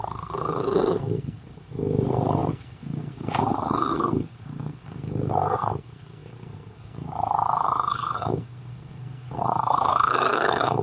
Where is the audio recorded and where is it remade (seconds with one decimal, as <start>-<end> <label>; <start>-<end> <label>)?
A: 0.0-10.8 remade

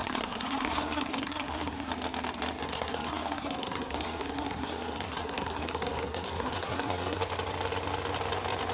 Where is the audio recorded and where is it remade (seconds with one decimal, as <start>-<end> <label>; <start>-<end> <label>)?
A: 0.0-1.9 remade; 1.9-2.6 recorded; 2.6-7.2 remade; 7.2-8.7 recorded

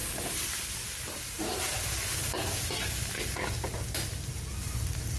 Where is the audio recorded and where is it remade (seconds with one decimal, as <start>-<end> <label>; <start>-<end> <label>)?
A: 0.0-0.6 remade; 0.6-5.2 recorded

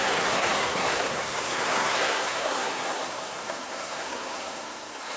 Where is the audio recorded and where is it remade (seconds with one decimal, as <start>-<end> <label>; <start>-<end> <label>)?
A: 0.0-5.2 remade

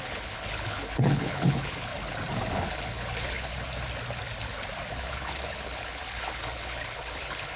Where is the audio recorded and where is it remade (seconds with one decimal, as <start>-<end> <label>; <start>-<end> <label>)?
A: 0.0-1.9 remade; 1.9-2.5 recorded; 2.5-3.5 remade; 3.5-4.9 recorded; 4.9-7.6 remade